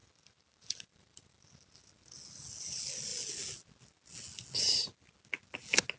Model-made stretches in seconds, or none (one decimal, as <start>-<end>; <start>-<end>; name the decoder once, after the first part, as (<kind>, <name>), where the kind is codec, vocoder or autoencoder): 0.0-1.7 (vocoder, BigVGAN v2)